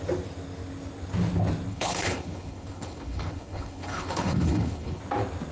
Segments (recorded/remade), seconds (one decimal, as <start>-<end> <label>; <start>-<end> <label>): 0.0-1.7 recorded; 1.7-5.0 remade; 5.0-5.5 recorded